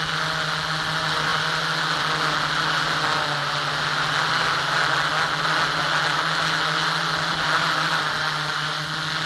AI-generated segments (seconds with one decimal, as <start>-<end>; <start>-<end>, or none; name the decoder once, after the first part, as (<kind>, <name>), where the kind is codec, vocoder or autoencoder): none